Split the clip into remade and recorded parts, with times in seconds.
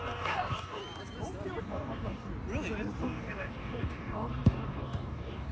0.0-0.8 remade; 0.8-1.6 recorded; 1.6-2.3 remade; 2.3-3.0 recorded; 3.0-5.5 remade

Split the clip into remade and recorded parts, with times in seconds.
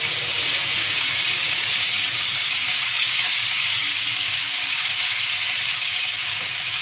0.0-0.8 recorded; 0.8-4.9 remade; 4.9-5.7 recorded; 5.7-6.8 remade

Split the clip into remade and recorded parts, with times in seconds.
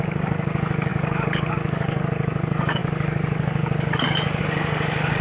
0.0-5.2 remade